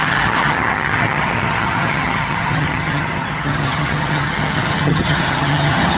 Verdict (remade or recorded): remade